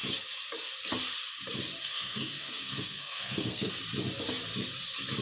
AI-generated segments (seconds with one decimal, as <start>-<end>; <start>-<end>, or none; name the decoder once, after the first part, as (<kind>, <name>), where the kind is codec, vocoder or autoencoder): 1.8-3.7 (codec, SNAC)